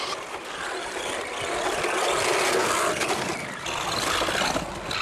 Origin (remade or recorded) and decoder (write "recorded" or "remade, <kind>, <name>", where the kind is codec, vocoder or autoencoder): recorded